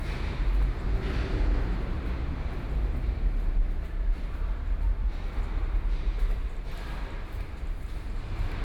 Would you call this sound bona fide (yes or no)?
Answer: no